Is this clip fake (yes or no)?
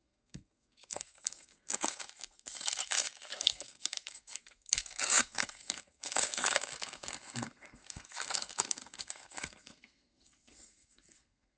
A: yes